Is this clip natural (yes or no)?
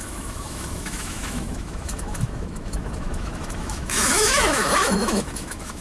no